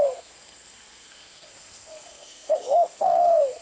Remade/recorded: remade